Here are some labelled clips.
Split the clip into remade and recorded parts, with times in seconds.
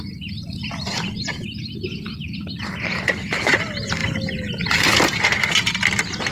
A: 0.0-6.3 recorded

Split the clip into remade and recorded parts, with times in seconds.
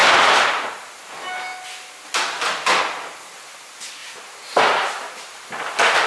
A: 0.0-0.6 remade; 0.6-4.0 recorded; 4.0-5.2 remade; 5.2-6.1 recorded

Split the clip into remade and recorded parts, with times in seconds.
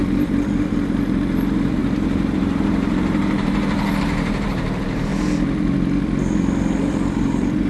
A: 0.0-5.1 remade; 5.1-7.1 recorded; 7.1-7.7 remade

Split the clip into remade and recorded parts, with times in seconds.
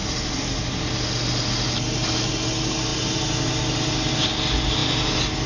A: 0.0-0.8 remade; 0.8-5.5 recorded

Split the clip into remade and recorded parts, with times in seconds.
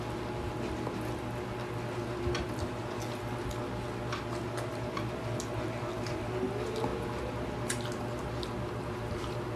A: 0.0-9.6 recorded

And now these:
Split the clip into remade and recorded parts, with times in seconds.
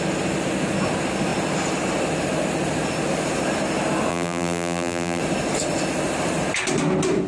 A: 0.0-4.1 recorded; 4.1-5.2 remade; 5.2-7.3 recorded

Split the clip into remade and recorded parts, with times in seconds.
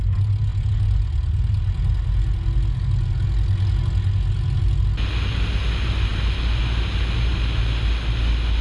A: 0.0-8.6 recorded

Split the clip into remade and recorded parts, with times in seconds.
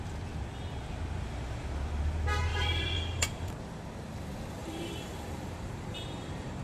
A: 0.0-2.5 recorded; 2.5-3.6 remade; 3.6-4.6 recorded; 4.6-6.6 remade